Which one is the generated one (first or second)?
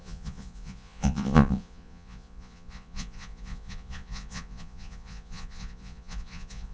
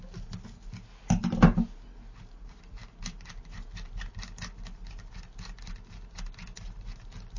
first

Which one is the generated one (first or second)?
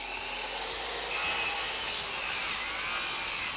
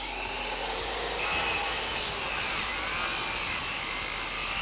second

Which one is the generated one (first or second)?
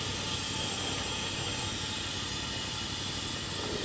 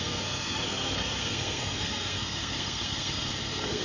second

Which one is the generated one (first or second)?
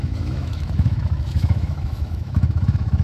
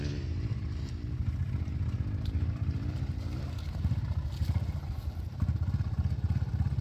first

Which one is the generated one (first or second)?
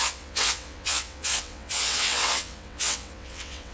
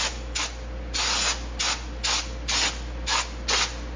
first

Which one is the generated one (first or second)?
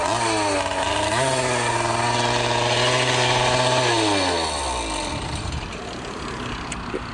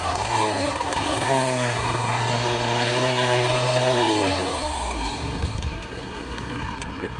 second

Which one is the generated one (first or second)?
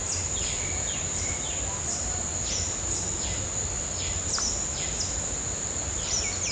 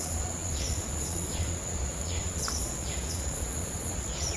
second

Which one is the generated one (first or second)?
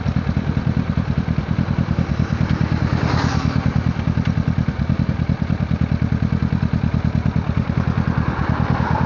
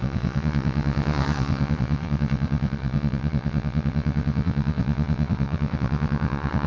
second